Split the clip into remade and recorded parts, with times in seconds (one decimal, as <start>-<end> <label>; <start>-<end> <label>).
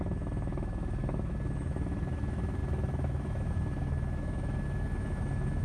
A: 0.0-5.6 remade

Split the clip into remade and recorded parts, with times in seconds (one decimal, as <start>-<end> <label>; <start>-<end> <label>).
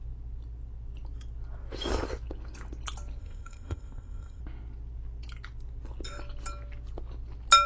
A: 0.0-3.2 recorded; 3.2-4.4 remade; 4.4-7.7 recorded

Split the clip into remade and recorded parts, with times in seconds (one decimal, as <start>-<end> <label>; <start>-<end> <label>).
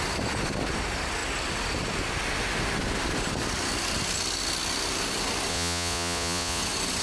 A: 0.0-5.5 recorded; 5.5-6.6 remade; 6.6-7.0 recorded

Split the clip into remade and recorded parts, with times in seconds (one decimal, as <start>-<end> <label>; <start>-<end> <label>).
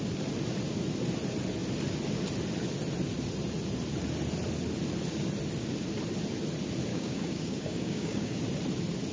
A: 0.0-6.9 recorded; 6.9-8.4 remade; 8.4-9.1 recorded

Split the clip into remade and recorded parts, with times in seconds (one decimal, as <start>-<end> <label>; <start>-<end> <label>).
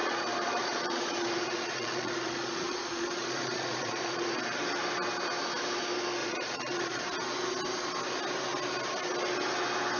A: 0.0-4.4 remade; 4.4-6.2 recorded; 6.2-7.0 remade; 7.0-10.0 recorded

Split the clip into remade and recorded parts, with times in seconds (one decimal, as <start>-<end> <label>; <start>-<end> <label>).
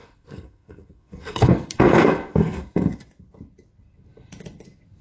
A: 0.0-3.0 remade; 3.0-5.0 recorded